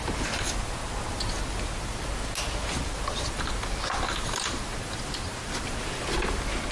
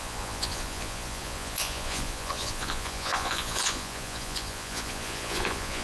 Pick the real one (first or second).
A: first